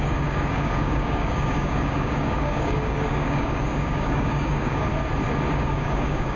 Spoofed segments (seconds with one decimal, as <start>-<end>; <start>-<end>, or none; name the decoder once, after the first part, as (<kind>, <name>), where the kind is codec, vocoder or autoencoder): 0.0-4.9 (codec, DAC); 5.5-6.4